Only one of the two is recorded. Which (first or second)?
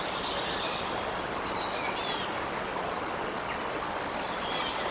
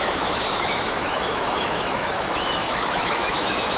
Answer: first